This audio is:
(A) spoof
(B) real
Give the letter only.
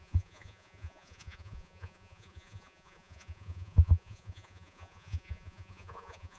A